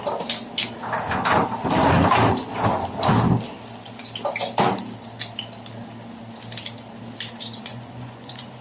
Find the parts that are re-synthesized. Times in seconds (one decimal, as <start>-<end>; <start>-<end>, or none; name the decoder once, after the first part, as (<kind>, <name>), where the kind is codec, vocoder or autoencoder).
7.6-8.6 (vocoder, Vocos)